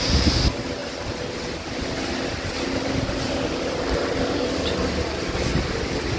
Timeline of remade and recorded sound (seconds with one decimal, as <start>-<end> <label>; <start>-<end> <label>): 0.0-6.2 recorded